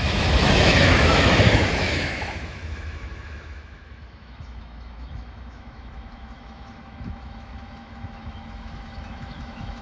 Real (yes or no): no